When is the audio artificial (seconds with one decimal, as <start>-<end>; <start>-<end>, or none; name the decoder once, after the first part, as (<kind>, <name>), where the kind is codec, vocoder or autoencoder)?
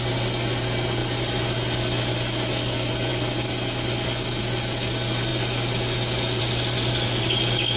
none